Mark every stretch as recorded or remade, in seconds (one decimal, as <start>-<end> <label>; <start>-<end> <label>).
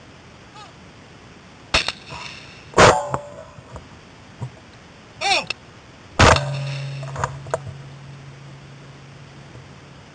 0.0-3.0 recorded; 3.0-3.7 remade; 3.7-10.1 recorded